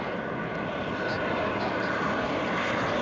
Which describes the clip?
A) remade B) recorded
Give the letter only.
B